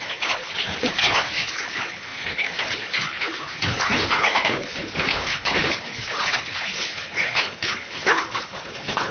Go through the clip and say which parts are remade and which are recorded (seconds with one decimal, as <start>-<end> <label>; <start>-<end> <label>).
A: 0.0-9.1 remade

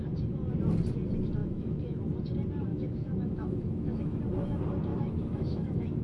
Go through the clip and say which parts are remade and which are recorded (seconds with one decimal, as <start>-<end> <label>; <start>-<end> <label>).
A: 0.0-1.4 recorded; 1.4-2.0 remade; 2.0-2.7 recorded; 2.7-4.2 remade; 4.2-4.9 recorded; 4.9-6.0 remade

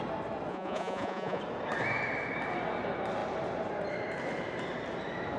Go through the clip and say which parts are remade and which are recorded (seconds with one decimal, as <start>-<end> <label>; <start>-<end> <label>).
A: 0.0-0.5 recorded; 0.5-1.4 remade; 1.4-5.4 recorded

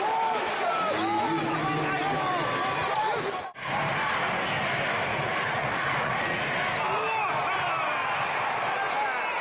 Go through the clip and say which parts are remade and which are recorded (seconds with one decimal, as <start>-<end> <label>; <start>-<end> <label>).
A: 0.0-5.1 recorded; 5.1-6.5 remade; 6.5-9.4 recorded